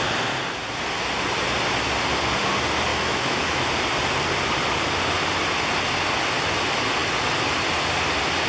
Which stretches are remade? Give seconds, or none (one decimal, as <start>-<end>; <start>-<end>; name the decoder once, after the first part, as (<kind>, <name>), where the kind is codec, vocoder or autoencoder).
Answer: 2.9-3.7 (autoencoder, DAC-VAE)